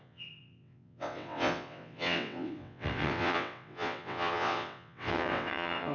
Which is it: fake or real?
fake